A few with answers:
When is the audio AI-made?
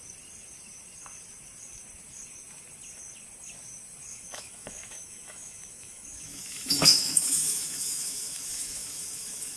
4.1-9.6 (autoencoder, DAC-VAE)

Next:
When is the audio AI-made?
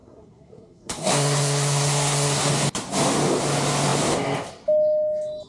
0.0-2.5 (codec, SNAC)